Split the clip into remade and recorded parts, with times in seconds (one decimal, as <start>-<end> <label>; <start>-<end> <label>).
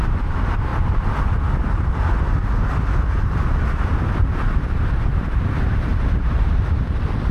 0.0-0.7 remade; 0.7-5.1 recorded; 5.1-7.3 remade